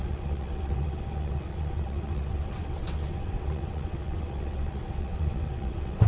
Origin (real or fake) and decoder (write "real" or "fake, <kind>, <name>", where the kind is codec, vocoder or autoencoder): fake, vocoder, WaveNeXt